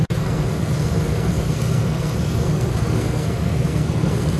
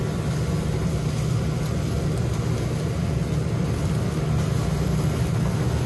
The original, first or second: second